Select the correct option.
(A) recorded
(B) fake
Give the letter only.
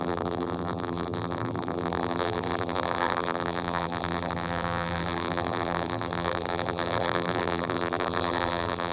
B